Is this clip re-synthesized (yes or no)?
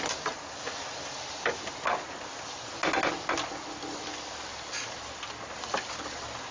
no